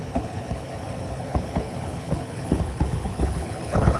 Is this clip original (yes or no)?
no